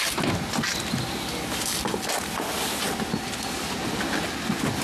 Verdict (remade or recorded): recorded